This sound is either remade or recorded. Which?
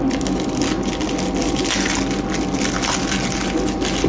recorded